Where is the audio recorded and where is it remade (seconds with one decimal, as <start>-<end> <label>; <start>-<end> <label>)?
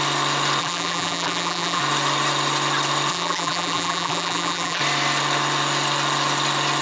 0.0-0.6 recorded; 0.6-1.8 remade; 1.8-3.1 recorded; 3.1-4.8 remade; 4.8-6.8 recorded